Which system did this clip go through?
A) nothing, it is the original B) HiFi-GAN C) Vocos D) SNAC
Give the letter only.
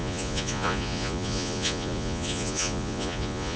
C